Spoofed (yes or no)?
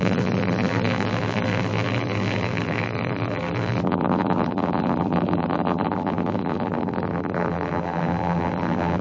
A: yes